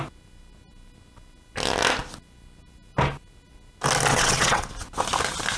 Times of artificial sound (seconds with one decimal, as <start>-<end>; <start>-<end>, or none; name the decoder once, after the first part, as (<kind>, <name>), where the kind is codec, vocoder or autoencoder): 4.1-4.7 (vocoder, WaveNeXt)